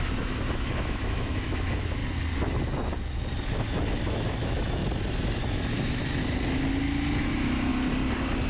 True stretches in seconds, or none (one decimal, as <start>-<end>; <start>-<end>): 2.0-4.1; 4.8-5.4; 6.2-7.2; 7.7-8.5